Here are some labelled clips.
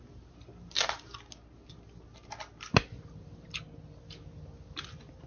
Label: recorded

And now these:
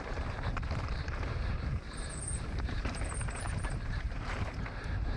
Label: remade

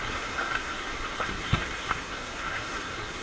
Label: remade